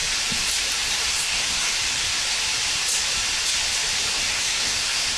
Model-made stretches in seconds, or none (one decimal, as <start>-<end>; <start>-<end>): 0.8-1.7; 4.3-5.2